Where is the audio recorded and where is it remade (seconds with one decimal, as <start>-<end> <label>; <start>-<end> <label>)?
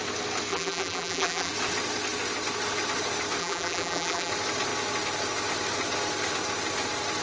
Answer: 0.0-0.5 recorded; 0.5-1.5 remade; 1.5-3.4 recorded; 3.4-4.3 remade; 4.3-7.2 recorded